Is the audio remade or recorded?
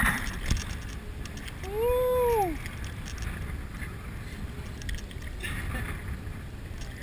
recorded